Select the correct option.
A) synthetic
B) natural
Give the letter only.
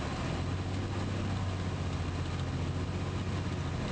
B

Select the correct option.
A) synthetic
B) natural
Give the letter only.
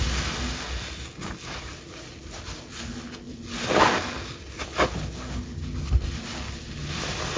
B